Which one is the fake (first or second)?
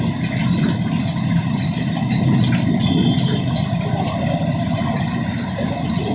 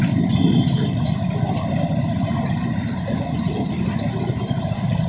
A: second